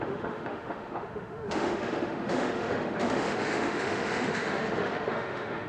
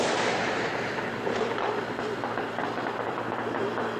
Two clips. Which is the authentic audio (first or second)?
second